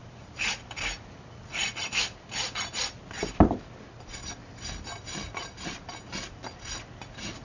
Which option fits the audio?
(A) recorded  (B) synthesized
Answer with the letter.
A